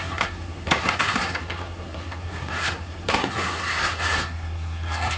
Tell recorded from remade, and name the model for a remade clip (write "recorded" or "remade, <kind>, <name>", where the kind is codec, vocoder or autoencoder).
remade, codec, SNAC